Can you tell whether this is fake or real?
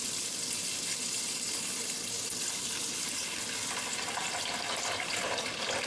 fake